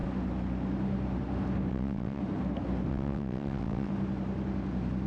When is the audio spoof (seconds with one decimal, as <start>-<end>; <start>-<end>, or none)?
1.7-2.2; 2.9-3.9